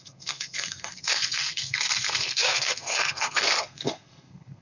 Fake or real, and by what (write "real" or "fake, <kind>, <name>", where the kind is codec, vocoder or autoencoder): fake, codec, SNAC